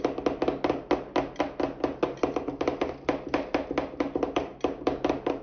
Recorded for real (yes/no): yes